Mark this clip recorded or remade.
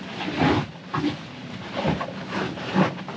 recorded